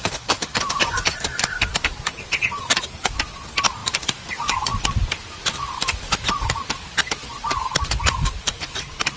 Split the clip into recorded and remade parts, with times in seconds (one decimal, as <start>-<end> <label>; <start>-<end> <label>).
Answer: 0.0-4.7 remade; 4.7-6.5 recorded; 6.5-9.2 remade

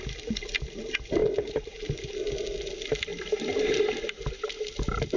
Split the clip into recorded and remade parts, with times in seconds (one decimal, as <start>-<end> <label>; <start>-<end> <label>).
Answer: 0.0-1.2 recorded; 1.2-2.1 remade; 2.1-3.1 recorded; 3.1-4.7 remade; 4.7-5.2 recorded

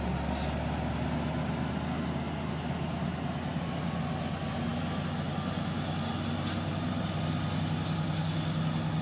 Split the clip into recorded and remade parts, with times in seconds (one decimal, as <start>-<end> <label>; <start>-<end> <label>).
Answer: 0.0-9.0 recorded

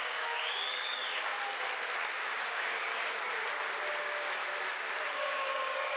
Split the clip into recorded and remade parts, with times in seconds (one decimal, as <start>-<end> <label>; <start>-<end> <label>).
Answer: 0.0-1.3 remade; 1.3-2.1 recorded; 2.1-2.9 remade; 2.9-4.0 recorded; 4.0-4.4 remade; 4.4-5.1 recorded; 5.1-6.0 remade

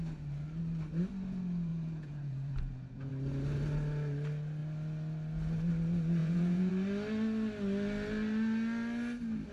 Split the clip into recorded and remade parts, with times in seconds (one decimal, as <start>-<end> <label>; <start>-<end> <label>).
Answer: 0.0-1.7 recorded; 1.7-3.1 remade; 3.1-6.2 recorded; 6.2-6.7 remade; 6.7-9.5 recorded

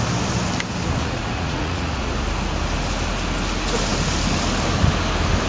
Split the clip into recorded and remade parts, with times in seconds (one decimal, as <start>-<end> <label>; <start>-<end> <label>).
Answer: 0.0-1.0 recorded; 1.0-2.1 remade; 2.1-5.5 recorded

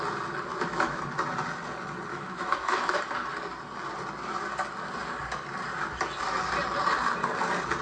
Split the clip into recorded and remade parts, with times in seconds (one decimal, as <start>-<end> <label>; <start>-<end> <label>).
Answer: 0.0-0.5 recorded; 0.5-1.0 remade; 1.0-2.1 recorded; 2.1-3.0 remade; 3.0-7.8 recorded

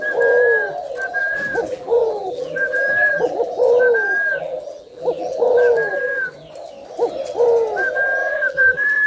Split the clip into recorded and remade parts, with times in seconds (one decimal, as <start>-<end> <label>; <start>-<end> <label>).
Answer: 0.0-1.2 recorded; 1.2-3.8 remade; 3.8-4.4 recorded; 4.4-5.9 remade; 5.9-8.2 recorded; 8.2-9.1 remade